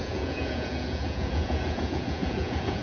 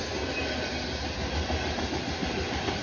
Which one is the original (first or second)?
second